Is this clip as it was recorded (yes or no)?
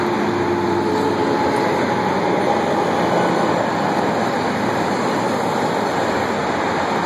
yes